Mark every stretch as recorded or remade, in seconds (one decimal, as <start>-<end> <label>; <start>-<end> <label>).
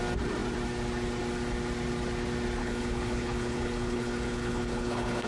0.0-2.6 recorded; 2.6-5.3 remade